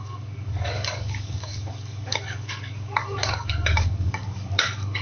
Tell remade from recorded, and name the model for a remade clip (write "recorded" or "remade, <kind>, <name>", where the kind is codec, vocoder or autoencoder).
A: remade, codec, DAC